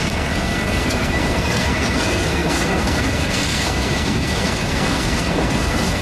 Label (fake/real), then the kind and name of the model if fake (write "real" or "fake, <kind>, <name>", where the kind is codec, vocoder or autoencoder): fake, codec, SNAC